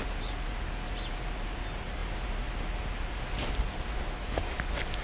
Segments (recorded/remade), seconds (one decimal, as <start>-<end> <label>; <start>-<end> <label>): 0.0-5.0 recorded